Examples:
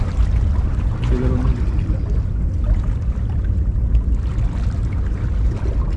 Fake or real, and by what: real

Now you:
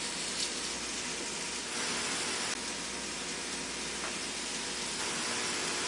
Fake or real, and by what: real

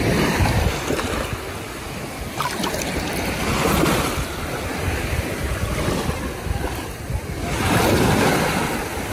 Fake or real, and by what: real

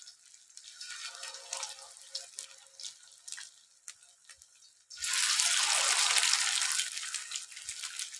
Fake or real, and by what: real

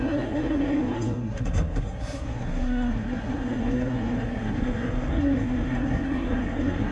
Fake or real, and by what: fake, codec, SNAC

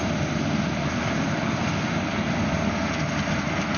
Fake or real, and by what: real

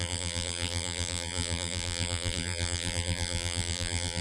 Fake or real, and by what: fake, vocoder, BigVGAN v2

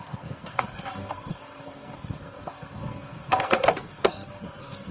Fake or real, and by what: fake, codec, SNAC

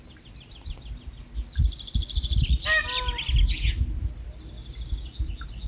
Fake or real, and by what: real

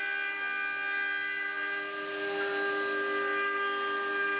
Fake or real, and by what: real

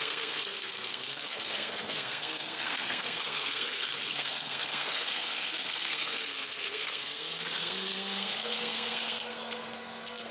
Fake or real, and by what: fake, codec, SNAC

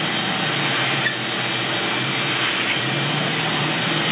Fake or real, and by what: real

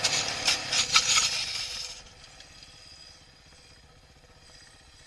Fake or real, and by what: real